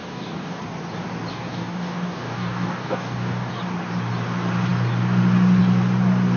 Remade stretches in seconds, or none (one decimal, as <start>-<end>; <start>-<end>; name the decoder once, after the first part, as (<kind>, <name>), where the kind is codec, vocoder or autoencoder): 0.0-0.6 (codec, DAC); 1.3-3.5